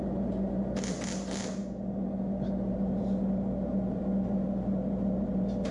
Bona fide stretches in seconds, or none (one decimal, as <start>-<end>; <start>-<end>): 0.0-5.7